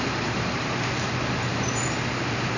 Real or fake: real